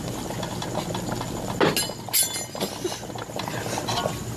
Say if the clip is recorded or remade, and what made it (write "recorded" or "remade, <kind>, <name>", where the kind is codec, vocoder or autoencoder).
recorded